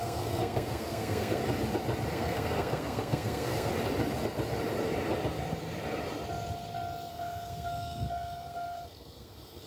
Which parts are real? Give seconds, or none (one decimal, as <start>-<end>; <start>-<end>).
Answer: 1.4-2.1; 3.7-7.1